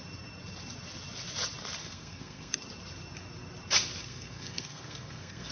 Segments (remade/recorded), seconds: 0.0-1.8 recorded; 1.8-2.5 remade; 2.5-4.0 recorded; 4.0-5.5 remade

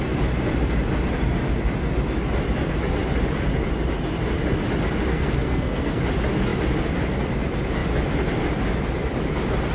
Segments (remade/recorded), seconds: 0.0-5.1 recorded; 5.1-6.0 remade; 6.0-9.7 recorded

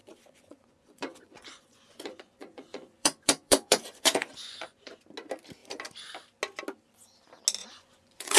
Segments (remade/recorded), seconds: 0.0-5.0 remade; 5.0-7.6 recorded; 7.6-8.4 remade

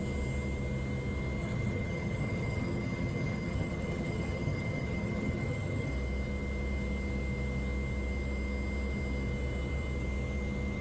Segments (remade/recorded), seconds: 0.0-1.4 recorded; 1.4-5.9 remade; 5.9-10.8 recorded